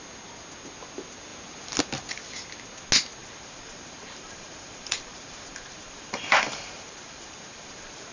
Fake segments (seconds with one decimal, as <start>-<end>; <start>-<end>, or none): 3.2-8.1